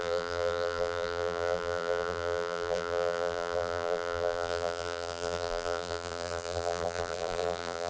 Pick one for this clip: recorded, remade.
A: remade